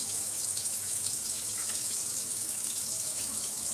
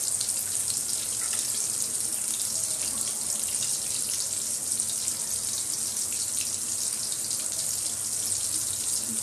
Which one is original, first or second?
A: second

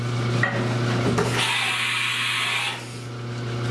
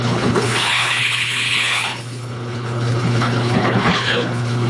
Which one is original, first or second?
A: first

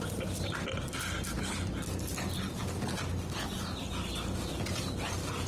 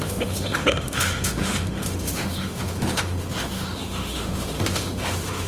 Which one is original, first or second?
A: first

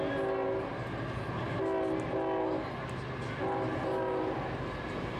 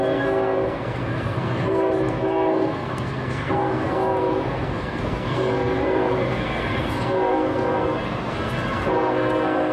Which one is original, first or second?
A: first